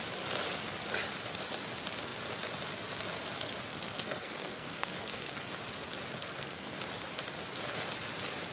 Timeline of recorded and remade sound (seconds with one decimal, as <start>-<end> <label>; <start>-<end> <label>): 0.0-3.7 recorded; 3.7-5.5 remade; 5.5-6.2 recorded; 6.2-6.8 remade; 6.8-8.5 recorded